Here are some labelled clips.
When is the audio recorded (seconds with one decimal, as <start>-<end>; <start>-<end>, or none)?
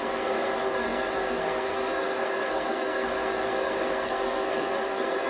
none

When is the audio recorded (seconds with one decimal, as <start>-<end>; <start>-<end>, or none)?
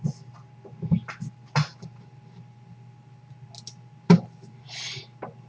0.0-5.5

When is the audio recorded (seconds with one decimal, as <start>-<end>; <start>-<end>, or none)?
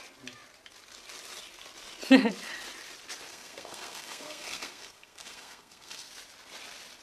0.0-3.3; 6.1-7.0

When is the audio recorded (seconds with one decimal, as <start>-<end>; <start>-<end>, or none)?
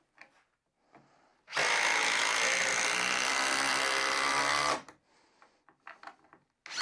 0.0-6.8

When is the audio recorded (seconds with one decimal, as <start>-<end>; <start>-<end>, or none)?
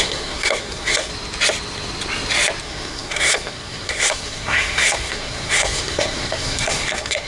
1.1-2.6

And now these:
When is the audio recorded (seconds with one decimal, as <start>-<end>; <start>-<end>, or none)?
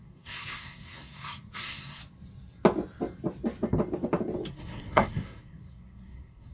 2.0-4.5